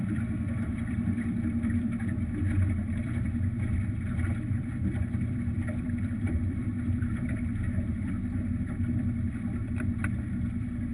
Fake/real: fake